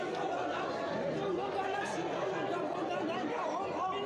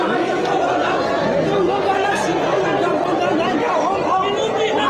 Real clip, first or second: second